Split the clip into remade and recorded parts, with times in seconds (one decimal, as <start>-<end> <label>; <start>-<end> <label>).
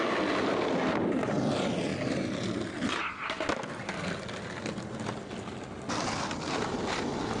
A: 0.0-7.4 recorded